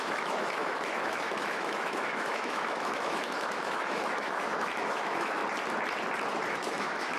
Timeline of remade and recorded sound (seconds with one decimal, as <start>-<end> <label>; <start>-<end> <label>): 0.0-5.4 remade; 5.4-6.5 recorded; 6.5-7.2 remade